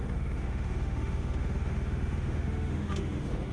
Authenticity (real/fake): fake